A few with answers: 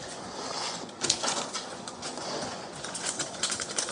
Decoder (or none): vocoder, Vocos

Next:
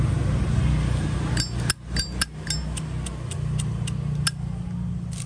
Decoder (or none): none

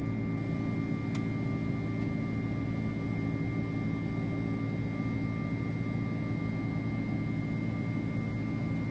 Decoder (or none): none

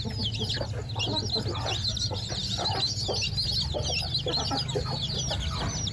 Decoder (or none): none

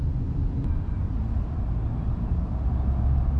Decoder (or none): none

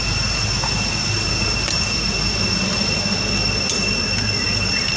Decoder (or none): none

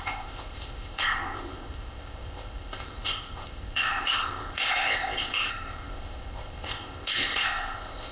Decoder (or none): codec, ZipCodec